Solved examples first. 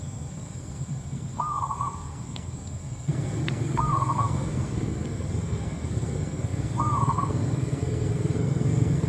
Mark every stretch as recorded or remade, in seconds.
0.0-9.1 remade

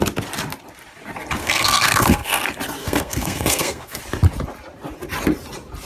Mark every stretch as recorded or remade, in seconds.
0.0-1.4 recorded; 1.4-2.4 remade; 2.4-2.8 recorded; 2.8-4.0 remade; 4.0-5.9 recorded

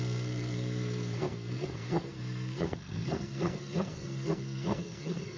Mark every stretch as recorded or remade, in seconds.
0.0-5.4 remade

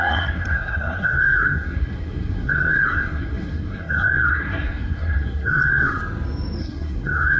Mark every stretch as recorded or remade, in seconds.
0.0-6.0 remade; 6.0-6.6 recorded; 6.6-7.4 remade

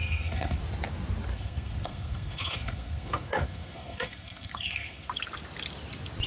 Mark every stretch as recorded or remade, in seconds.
0.0-0.6 remade; 0.6-1.3 recorded; 1.3-5.1 remade; 5.1-6.3 recorded

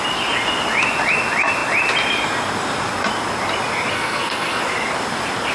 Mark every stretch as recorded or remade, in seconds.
0.0-3.9 recorded; 3.9-4.6 remade; 4.6-5.5 recorded

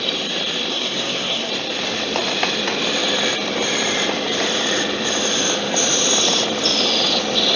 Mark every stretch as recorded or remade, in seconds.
0.0-0.7 recorded; 0.7-1.5 remade; 1.5-7.6 recorded

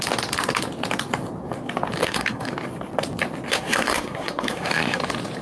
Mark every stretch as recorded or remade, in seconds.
0.0-2.0 recorded; 2.0-2.5 remade; 2.5-3.5 recorded; 3.5-5.0 remade; 5.0-5.4 recorded